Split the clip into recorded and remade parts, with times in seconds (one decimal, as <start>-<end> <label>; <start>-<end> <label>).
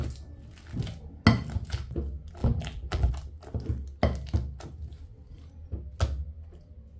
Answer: 0.0-2.4 recorded; 2.4-3.1 remade; 3.1-7.0 recorded